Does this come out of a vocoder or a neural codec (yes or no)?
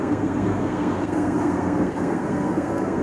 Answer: yes